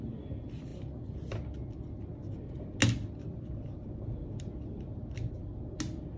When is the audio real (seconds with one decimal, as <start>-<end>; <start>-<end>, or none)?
0.0-6.2